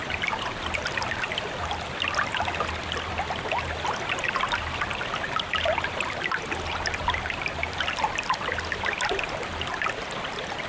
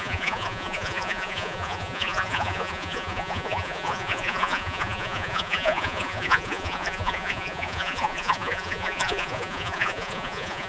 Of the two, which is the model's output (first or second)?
second